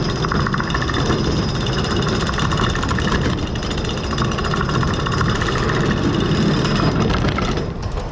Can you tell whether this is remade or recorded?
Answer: recorded